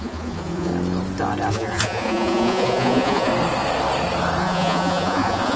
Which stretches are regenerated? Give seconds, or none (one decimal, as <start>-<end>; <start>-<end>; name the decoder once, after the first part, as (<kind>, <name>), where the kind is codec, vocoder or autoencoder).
0.0-0.7 (vocoder, Vocos); 1.5-3.3; 4.4-5.6